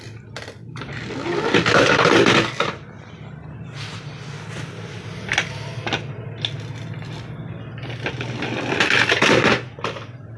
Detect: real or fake real